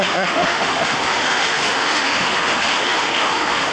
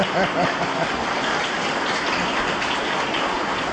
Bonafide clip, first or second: second